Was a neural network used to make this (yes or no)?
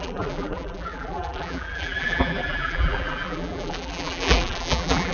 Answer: yes